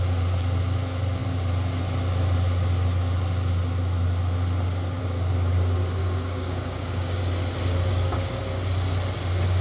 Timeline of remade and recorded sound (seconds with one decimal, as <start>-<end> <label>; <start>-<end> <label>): 0.0-6.0 recorded; 6.0-7.2 remade; 7.2-7.9 recorded; 7.9-8.4 remade; 8.4-9.6 recorded